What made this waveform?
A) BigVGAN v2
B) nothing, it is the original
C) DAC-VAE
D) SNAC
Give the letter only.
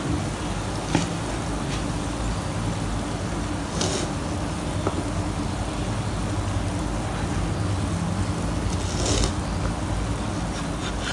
B